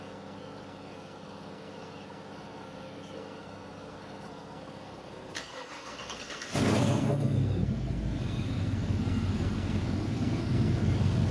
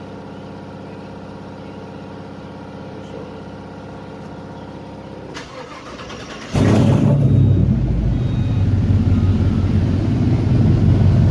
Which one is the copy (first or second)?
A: first